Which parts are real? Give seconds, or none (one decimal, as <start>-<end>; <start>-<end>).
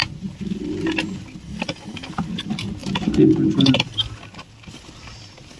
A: 0.0-5.6